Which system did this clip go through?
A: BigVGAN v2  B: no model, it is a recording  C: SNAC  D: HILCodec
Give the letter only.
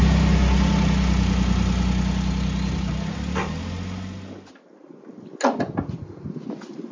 B